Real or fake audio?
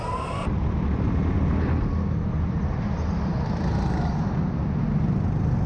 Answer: real